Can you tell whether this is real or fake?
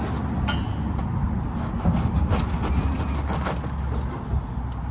real